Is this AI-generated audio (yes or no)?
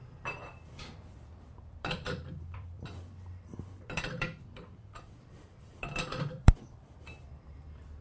yes